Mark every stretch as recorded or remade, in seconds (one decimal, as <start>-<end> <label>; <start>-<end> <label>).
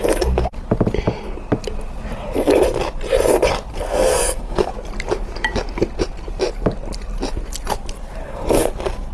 0.0-3.7 recorded; 3.7-4.7 remade; 4.7-8.2 recorded; 8.2-8.7 remade; 8.7-9.1 recorded